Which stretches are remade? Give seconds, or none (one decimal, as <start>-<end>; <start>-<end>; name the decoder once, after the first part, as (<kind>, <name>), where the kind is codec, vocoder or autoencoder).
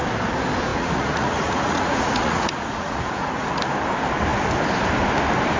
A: 0.7-3.6 (vocoder, Vocos)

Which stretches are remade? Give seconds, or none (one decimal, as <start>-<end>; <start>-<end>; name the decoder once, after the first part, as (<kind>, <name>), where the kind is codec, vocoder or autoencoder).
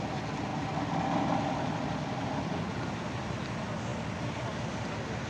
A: none